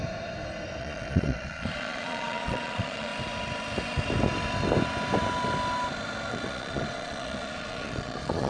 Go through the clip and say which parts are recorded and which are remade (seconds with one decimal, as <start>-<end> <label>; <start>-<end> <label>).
0.0-0.8 recorded; 0.8-3.1 remade; 3.1-6.3 recorded; 6.3-8.5 remade